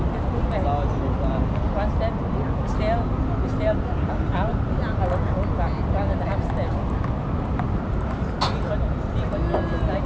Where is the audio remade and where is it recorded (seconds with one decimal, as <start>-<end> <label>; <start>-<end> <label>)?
0.0-10.1 recorded